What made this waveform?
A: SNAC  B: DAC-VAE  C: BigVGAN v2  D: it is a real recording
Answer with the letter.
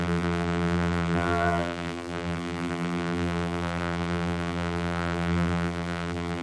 C